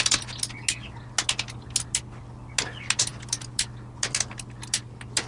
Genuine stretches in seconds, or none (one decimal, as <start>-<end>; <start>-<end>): 0.0-5.3